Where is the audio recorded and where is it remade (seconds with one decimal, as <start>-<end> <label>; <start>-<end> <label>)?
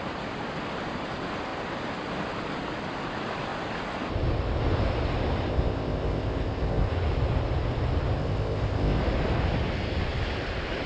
0.0-5.5 recorded; 5.5-6.9 remade; 6.9-8.2 recorded; 8.2-9.0 remade; 9.0-10.9 recorded